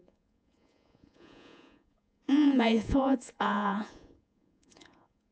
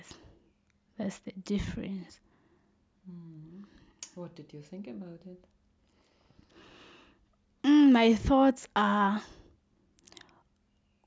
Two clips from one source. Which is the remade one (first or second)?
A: first